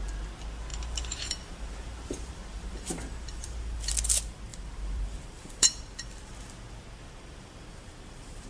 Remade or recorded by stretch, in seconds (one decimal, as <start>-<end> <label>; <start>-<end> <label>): 0.0-0.7 recorded; 0.7-3.9 remade; 3.9-4.5 recorded; 4.5-5.8 remade; 5.8-7.7 recorded; 7.7-8.5 remade

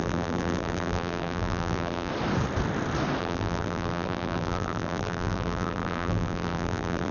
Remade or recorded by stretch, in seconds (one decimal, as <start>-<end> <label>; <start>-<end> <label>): 0.0-2.1 remade; 2.1-3.2 recorded; 3.2-7.1 remade